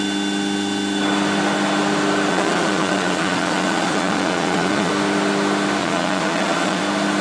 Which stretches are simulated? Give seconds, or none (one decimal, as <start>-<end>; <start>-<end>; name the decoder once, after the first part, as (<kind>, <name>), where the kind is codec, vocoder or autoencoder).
2.3-4.9 (vocoder, Vocos); 5.8-6.8